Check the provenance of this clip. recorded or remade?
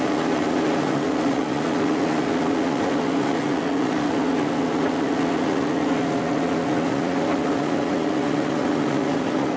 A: remade